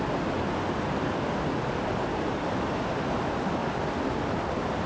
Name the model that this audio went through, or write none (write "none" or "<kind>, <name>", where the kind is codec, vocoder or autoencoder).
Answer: none